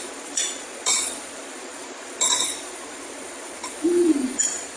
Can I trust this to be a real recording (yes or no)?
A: no